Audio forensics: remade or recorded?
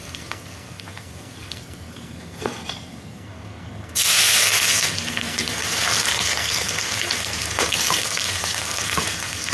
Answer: remade